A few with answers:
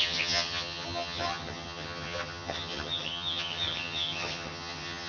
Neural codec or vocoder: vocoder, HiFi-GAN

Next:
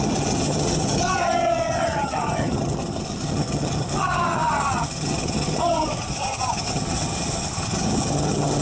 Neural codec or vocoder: vocoder, HiFi-GAN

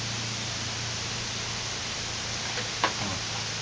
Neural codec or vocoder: none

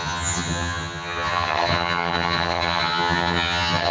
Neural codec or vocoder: vocoder, HiFi-GAN